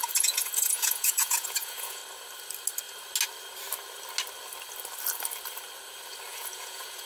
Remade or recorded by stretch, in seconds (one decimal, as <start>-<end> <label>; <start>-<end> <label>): 0.0-2.0 remade; 2.0-6.3 recorded; 6.3-7.1 remade